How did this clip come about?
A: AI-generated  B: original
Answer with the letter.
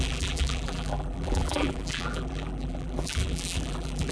A